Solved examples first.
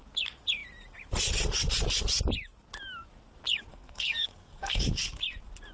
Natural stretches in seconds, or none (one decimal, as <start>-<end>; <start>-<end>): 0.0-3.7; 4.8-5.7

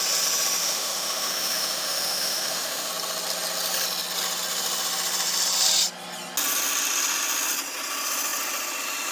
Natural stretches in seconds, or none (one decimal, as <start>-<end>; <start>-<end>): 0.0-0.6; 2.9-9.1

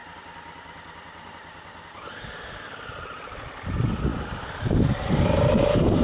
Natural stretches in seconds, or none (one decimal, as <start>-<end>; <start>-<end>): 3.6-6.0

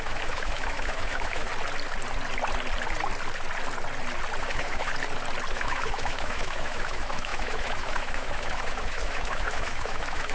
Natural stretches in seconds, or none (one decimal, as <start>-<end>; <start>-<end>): 1.5-4.4; 4.9-5.5

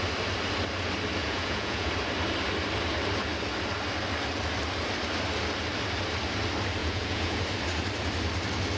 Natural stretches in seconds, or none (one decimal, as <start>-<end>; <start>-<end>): 0.0-1.2; 1.9-6.8; 7.4-8.8

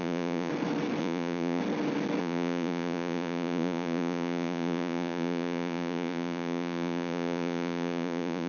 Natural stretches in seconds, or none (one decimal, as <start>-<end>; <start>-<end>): 0.5-1.0; 1.6-2.2

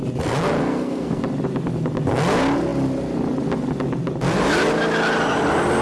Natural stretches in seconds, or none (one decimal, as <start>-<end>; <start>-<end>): 0.0-0.6; 1.2-5.8

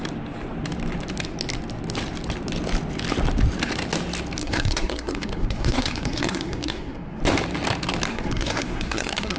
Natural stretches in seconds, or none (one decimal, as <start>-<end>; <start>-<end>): 0.0-4.4; 7.2-8.1